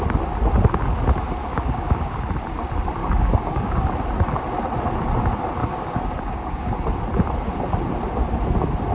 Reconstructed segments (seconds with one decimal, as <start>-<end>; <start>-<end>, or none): 1.4-2.1; 3.0-3.9; 5.6-6.7